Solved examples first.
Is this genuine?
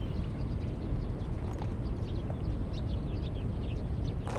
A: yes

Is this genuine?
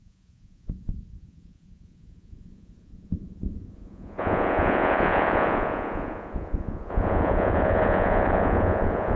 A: no